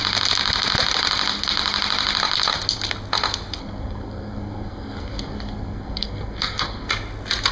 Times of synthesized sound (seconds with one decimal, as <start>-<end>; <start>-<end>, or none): 3.6-6.9